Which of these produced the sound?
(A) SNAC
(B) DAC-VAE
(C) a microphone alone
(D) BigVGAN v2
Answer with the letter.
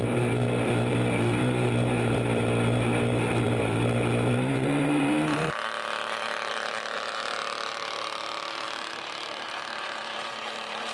D